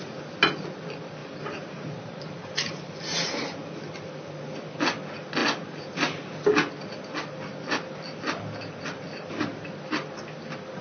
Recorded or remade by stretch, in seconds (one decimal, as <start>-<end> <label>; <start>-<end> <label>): 0.0-1.2 recorded; 1.2-2.8 remade; 2.8-10.8 recorded